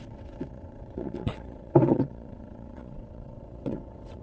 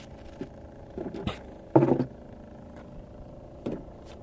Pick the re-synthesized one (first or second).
first